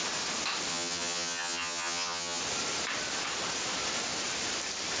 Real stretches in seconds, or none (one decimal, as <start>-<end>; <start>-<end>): 0.0-0.7; 2.4-5.0